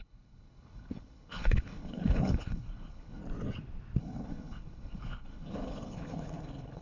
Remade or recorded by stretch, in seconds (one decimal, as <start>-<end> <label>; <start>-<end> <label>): 0.0-3.2 remade; 3.2-4.0 recorded; 4.0-6.8 remade

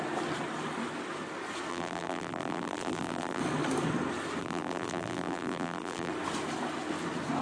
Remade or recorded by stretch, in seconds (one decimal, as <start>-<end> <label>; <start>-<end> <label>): 0.0-1.7 recorded; 1.7-3.4 remade; 3.4-4.4 recorded; 4.4-6.1 remade; 6.1-7.4 recorded

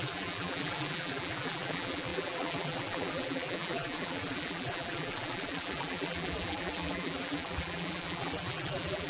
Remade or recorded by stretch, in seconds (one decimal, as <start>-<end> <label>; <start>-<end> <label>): 0.0-9.1 remade

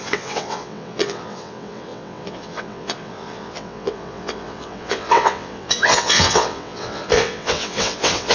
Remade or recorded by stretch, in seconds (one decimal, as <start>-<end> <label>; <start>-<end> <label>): 0.0-8.3 remade

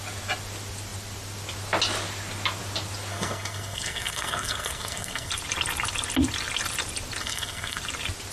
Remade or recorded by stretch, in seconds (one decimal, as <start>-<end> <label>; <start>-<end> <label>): 0.0-3.1 recorded; 3.1-5.3 remade; 5.3-7.2 recorded; 7.2-7.8 remade; 7.8-8.3 recorded

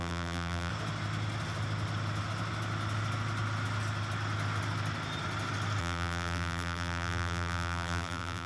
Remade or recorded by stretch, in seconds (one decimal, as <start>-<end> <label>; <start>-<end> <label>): 0.0-0.7 remade; 0.7-5.8 recorded; 5.8-8.5 remade

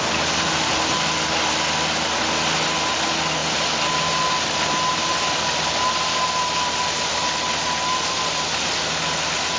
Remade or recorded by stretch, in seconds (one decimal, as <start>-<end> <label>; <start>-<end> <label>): 0.0-9.6 recorded

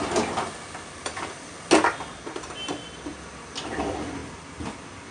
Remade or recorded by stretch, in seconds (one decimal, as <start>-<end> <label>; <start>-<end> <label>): 0.0-5.1 recorded